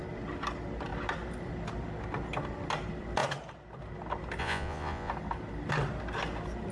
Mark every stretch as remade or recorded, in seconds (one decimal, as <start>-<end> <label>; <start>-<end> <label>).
0.0-4.4 recorded; 4.4-5.1 remade; 5.1-6.7 recorded